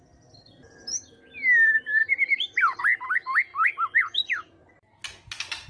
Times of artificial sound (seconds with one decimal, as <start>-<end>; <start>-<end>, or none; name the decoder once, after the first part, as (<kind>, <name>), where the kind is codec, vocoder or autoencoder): 2.0-2.8 (vocoder, BigVGAN v2); 3.5-4.7